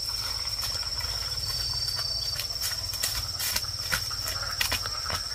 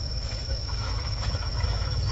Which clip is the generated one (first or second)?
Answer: second